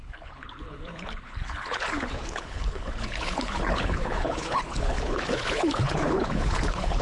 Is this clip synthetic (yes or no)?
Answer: yes